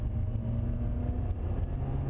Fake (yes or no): no